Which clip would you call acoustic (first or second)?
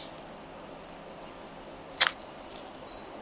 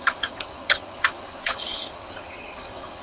first